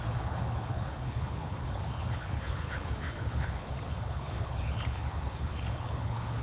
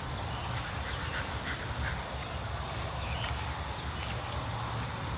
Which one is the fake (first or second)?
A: first